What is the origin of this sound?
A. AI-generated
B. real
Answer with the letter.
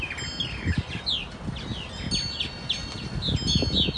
B